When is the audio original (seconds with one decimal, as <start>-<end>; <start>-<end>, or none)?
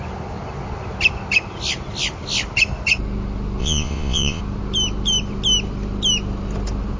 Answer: 0.0-3.6; 4.4-7.0